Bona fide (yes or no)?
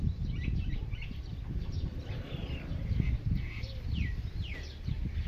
yes